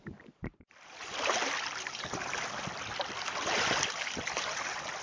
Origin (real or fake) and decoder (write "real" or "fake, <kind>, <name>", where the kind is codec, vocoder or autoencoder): real